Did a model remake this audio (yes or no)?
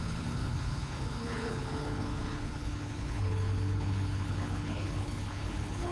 yes